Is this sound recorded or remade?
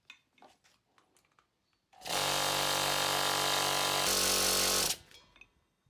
recorded